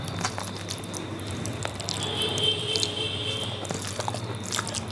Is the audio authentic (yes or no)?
yes